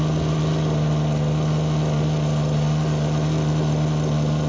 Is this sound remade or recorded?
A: recorded